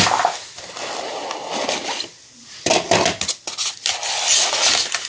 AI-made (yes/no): no